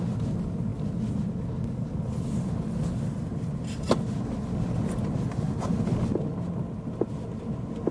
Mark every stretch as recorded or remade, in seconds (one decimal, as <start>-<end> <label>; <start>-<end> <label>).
0.0-7.9 recorded